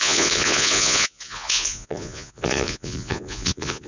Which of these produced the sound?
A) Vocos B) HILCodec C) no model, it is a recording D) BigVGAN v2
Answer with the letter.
A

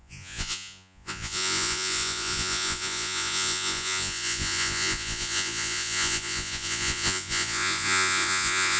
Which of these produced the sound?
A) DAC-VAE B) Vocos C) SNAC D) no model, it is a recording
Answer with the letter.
B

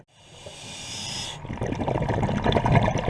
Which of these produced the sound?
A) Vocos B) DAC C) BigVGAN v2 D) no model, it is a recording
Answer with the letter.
D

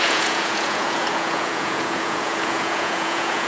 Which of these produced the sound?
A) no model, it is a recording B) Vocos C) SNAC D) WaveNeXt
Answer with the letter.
B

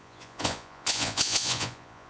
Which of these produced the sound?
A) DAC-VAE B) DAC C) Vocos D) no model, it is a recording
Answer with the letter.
C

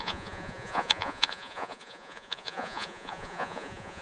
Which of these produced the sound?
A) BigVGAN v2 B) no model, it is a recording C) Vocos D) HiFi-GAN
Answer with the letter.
C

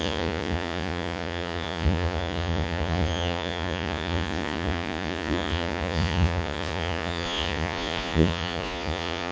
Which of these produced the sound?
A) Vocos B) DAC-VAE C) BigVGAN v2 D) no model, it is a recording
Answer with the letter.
A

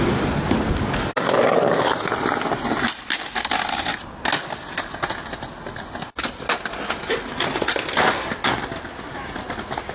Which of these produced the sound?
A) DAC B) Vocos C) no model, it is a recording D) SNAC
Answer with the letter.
C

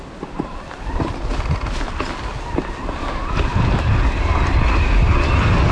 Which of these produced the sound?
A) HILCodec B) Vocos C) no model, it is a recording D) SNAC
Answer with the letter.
C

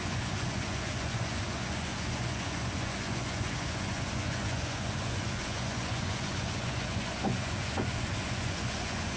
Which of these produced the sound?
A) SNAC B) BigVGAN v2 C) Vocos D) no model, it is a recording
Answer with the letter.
C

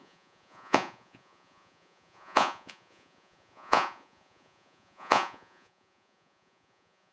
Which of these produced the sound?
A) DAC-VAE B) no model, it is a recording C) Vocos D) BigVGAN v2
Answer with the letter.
C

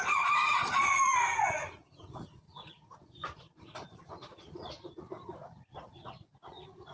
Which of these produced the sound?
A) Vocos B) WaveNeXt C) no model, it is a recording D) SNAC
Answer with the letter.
A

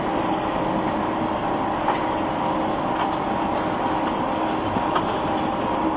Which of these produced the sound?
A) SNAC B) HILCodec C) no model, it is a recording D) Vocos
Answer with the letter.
C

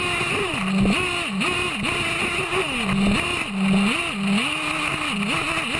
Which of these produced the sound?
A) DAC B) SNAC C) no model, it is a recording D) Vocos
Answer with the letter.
C